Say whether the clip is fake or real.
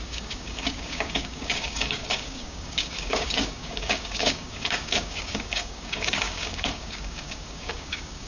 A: fake